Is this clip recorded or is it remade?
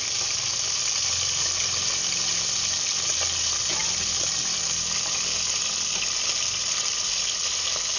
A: recorded